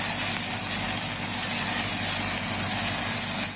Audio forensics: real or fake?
real